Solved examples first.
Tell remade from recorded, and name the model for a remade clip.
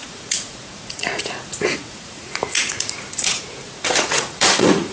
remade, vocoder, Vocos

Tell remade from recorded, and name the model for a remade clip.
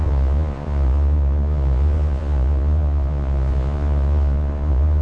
remade, vocoder, Vocos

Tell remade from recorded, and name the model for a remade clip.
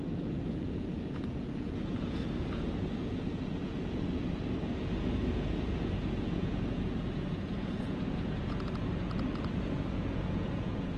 remade, vocoder, Vocos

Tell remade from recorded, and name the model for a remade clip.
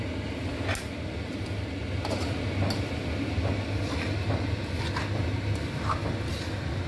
recorded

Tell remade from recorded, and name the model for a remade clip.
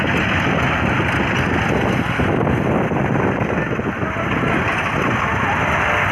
recorded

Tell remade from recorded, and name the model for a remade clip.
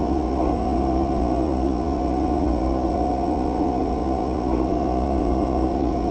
remade, vocoder, Vocos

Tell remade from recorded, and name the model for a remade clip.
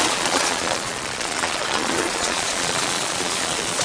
remade, vocoder, Vocos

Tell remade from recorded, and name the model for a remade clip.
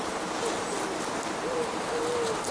recorded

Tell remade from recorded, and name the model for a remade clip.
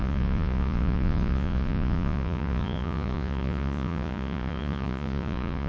remade, vocoder, Vocos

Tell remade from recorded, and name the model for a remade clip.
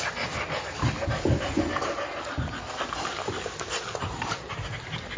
recorded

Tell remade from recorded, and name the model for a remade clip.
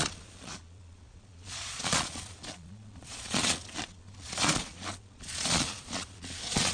remade, vocoder, Vocos